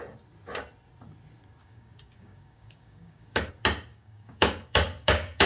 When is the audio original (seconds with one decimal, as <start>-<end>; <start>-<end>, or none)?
0.0-1.6; 3.5-3.9